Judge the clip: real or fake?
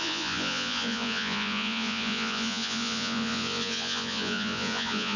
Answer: fake